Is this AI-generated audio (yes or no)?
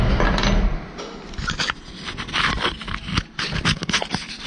no